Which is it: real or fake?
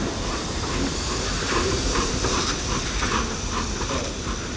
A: real